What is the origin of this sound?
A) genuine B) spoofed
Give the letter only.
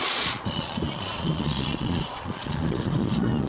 B